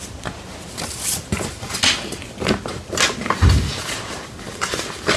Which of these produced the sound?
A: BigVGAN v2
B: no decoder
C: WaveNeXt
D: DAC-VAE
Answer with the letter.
B